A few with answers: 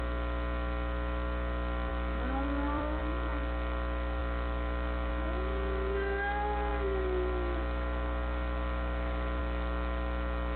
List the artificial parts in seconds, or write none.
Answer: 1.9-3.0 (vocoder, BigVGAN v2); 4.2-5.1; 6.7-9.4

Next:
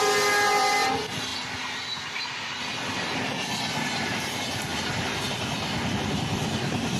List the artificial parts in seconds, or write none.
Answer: none

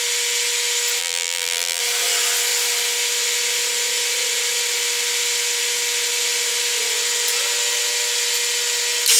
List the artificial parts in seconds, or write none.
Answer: 1.0-1.8 (vocoder, BigVGAN v2)

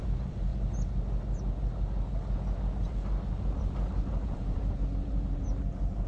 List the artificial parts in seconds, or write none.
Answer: 0.0-0.5 (vocoder, BigVGAN v2); 2.9-6.1

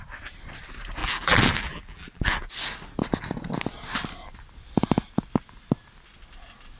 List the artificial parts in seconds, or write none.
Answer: 1.0-2.5 (vocoder, BigVGAN v2)